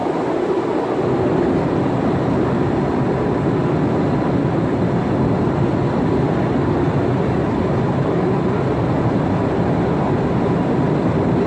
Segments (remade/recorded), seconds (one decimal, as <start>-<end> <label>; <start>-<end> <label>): 0.0-11.5 recorded